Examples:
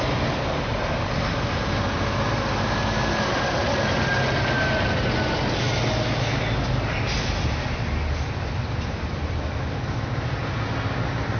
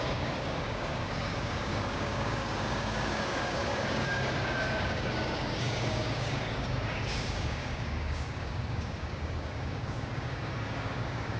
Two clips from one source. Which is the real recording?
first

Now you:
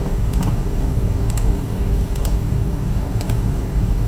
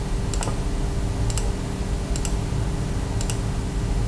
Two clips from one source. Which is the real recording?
second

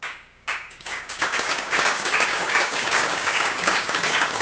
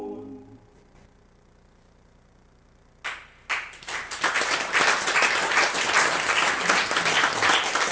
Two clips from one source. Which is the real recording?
second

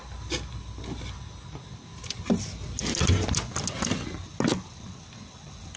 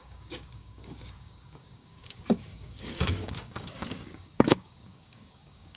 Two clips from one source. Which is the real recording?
first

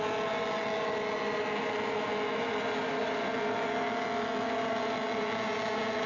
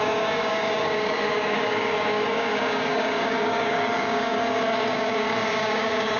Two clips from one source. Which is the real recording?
first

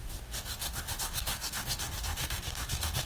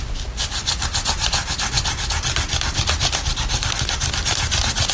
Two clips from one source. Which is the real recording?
second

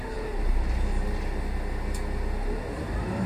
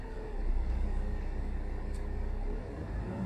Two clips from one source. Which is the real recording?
first